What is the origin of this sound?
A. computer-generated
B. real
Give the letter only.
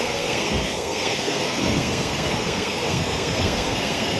A